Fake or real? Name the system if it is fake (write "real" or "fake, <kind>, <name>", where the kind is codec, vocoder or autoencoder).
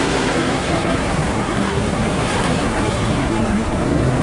fake, codec, SNAC